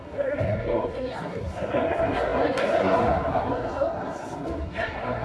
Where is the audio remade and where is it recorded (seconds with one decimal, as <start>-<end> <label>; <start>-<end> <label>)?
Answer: 0.0-5.2 remade